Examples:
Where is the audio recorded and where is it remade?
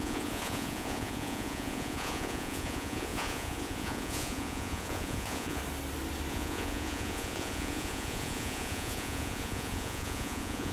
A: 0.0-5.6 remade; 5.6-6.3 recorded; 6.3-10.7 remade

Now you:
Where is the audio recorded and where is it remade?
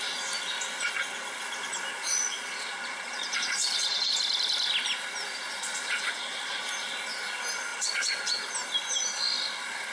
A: 0.0-1.9 recorded; 1.9-4.1 remade; 4.1-5.5 recorded; 5.5-6.6 remade; 6.6-7.7 recorded; 7.7-8.4 remade; 8.4-9.9 recorded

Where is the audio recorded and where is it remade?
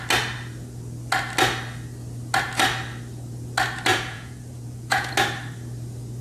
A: 0.0-3.9 recorded; 3.9-5.1 remade; 5.1-6.2 recorded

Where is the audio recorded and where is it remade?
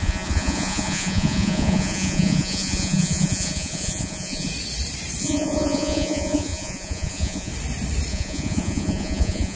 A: 0.0-4.5 remade; 4.5-5.2 recorded; 5.2-7.5 remade; 7.5-8.1 recorded; 8.1-9.6 remade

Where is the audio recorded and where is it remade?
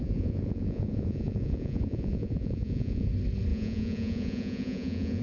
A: 0.0-3.1 remade; 3.1-3.5 recorded; 3.5-5.2 remade